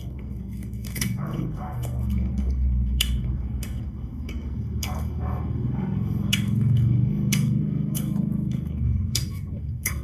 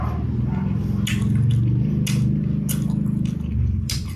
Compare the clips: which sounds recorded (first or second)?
second